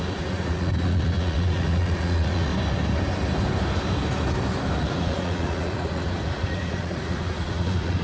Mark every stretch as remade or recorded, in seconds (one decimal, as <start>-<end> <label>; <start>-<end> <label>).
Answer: 0.0-2.5 remade; 2.5-4.8 recorded; 4.8-8.0 remade